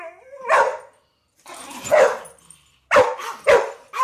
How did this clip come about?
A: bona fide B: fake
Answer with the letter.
B